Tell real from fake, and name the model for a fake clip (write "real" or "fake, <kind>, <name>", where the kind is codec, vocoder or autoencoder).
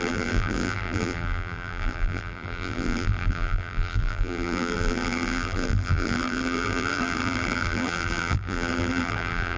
fake, vocoder, BigVGAN v2